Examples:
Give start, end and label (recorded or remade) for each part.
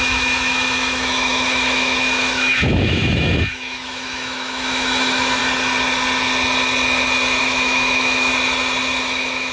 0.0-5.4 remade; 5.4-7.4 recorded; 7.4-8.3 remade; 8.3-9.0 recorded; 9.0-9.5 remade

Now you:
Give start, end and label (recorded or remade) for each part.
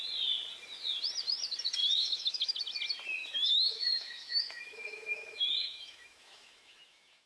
0.0-1.8 recorded; 1.8-2.6 remade; 2.6-3.2 recorded; 3.2-7.3 remade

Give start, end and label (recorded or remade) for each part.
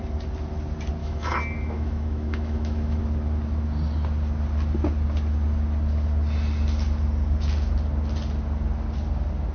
0.0-1.0 recorded; 1.0-3.0 remade; 3.0-9.5 recorded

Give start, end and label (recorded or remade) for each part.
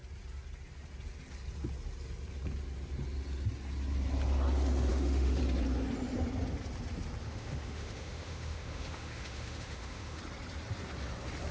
0.0-4.9 recorded; 4.9-5.4 remade; 5.4-7.2 recorded; 7.2-10.2 remade; 10.2-11.5 recorded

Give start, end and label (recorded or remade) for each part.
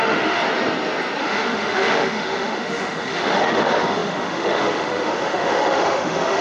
0.0-0.4 remade; 0.4-1.2 recorded; 1.2-6.4 remade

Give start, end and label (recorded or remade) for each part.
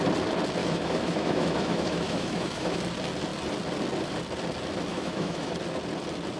0.0-0.6 recorded; 0.6-2.8 remade; 2.8-4.9 recorded; 4.9-5.5 remade; 5.5-6.4 recorded